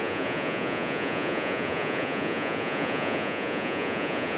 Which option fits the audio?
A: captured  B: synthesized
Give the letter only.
B